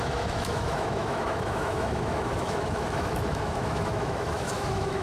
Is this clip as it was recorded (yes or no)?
no